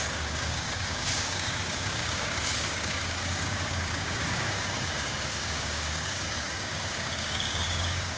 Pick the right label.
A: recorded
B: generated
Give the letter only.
B